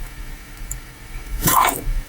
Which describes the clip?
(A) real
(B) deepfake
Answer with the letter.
B